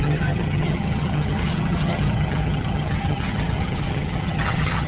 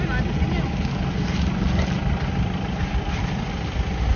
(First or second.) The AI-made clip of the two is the first